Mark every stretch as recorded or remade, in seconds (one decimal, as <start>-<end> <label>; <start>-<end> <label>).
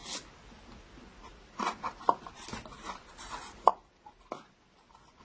0.0-3.1 recorded; 3.1-3.7 remade; 3.7-5.2 recorded